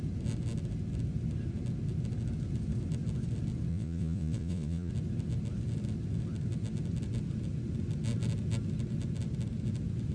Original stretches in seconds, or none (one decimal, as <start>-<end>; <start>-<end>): 0.0-3.7; 4.9-10.1